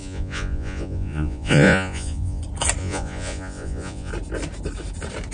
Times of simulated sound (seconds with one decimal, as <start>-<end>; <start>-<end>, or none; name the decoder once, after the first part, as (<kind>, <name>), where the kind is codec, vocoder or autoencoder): 0.0-2.4 (vocoder, Vocos); 2.8-4.1